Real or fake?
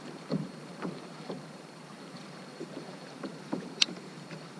fake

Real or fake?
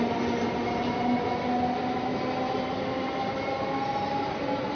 real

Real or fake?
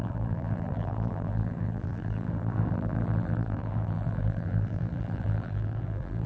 fake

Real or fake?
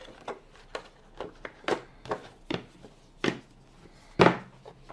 real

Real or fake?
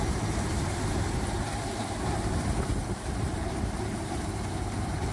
fake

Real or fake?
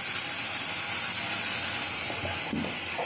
real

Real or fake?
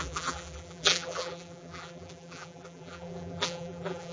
fake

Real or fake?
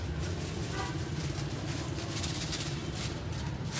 real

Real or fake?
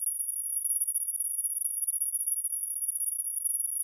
fake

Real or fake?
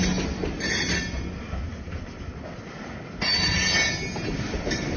real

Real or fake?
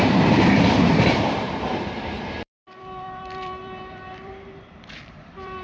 fake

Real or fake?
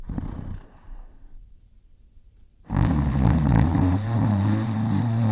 fake